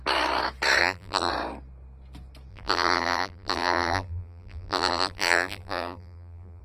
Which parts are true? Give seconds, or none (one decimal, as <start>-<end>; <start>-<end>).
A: 0.0-0.8; 1.3-2.5